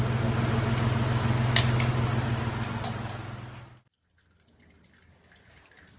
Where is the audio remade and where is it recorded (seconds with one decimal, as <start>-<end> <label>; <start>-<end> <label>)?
0.0-6.0 recorded